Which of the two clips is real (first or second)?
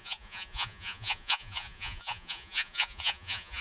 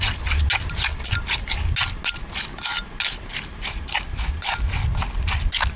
second